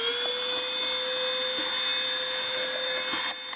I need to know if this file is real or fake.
real